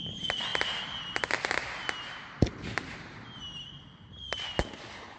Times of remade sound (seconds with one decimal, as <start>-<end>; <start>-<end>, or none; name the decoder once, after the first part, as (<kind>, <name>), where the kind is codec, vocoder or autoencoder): none

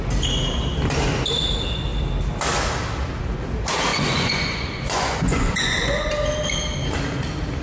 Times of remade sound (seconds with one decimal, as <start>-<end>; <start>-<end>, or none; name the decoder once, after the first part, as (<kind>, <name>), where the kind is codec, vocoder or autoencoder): 3.9-6.1 (vocoder, Vocos)

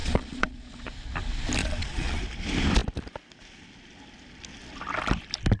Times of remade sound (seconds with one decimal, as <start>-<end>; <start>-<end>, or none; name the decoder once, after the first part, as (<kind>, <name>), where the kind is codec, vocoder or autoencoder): 0.0-0.9 (vocoder, Vocos); 1.6-2.2

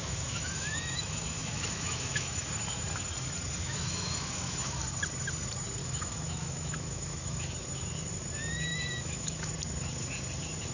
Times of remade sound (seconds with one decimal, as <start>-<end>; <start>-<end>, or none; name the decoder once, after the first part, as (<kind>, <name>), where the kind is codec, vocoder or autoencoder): 0.0-2.5 (autoencoder, DAC-VAE); 3.6-4.8; 5.8-7.5; 8.7-9.5

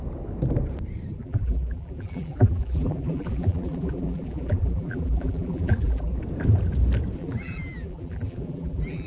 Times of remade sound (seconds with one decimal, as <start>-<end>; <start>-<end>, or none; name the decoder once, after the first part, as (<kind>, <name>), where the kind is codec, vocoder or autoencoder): 1.1-6.2 (vocoder, BigVGAN v2); 7.2-9.1

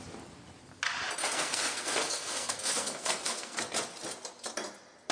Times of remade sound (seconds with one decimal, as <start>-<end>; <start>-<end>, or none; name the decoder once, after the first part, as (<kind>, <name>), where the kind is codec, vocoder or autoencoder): 1.2-3.6 (codec, SNAC)